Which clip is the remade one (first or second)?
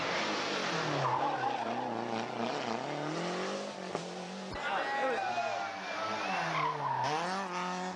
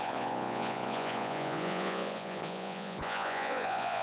second